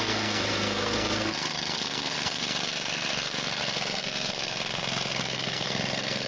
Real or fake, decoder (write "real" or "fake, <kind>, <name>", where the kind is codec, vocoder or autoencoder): fake, codec, SNAC